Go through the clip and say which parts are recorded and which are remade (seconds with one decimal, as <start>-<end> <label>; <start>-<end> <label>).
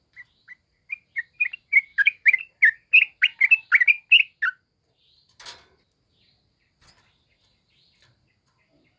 0.0-1.9 recorded; 1.9-2.4 remade; 2.4-9.0 recorded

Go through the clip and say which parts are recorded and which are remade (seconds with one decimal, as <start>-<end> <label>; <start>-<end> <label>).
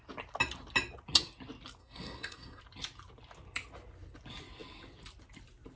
0.0-1.8 recorded; 1.8-2.6 remade; 2.6-5.8 recorded